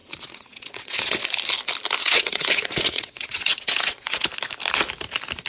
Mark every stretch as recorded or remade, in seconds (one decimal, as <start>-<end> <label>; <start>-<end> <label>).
0.0-1.2 remade; 1.2-2.0 recorded; 2.0-4.3 remade; 4.3-5.5 recorded

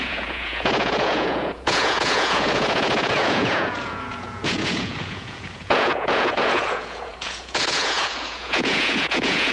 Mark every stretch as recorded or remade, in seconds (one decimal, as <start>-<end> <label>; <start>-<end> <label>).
0.0-9.5 remade

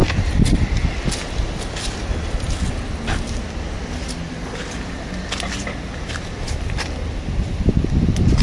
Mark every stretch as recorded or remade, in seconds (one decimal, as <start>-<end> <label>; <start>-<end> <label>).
0.0-8.4 recorded

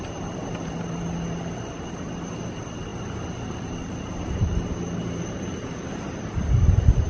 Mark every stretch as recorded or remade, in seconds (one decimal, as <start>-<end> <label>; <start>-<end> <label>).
0.0-7.1 recorded

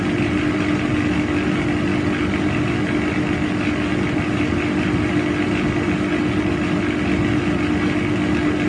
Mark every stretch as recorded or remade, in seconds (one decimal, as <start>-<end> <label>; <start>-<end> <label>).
0.0-8.7 recorded

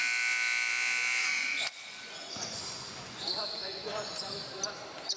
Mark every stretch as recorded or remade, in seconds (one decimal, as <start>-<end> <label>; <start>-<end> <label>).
0.0-1.2 recorded; 1.2-4.3 remade; 4.3-5.2 recorded

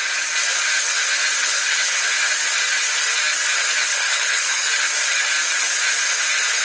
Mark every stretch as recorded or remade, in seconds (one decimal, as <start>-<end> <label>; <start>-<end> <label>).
0.0-1.4 recorded; 1.4-2.0 remade; 2.0-3.8 recorded; 3.8-4.7 remade; 4.7-6.6 recorded